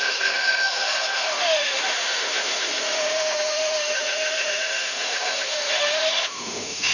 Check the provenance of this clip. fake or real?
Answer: fake